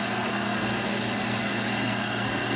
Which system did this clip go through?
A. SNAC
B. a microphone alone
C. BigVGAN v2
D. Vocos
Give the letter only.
A